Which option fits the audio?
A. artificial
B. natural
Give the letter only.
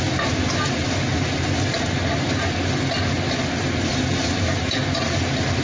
B